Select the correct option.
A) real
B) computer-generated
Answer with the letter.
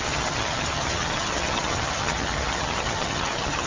B